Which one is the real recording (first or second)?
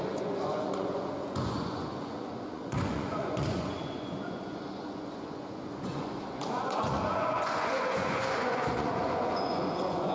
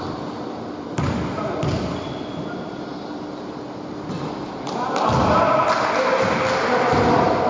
second